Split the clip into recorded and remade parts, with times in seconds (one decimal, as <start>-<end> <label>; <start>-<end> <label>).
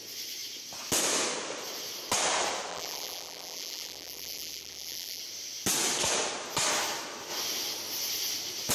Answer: 0.0-2.7 recorded; 2.7-5.2 remade; 5.2-8.7 recorded